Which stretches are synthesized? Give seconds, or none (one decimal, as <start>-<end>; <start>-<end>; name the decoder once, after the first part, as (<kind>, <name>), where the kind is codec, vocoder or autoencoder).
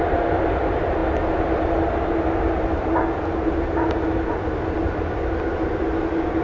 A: none